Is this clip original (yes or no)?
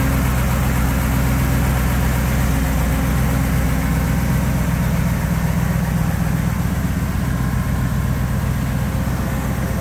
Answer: yes